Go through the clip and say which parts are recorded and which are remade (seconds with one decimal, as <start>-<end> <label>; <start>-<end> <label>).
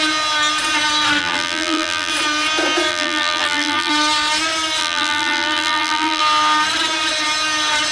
0.0-1.2 recorded; 1.2-2.1 remade; 2.1-2.9 recorded; 2.9-3.9 remade; 3.9-4.8 recorded; 4.8-6.2 remade; 6.2-7.9 recorded